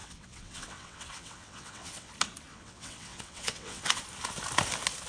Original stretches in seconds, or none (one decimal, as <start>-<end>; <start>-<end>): 2.1-2.5; 4.0-5.1